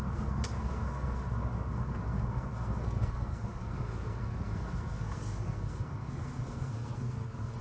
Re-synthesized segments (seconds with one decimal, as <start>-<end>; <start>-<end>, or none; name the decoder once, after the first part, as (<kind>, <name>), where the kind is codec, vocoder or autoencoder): 0.0-7.6 (codec, SNAC)